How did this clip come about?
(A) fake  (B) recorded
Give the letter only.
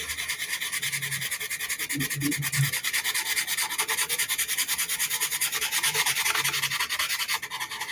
B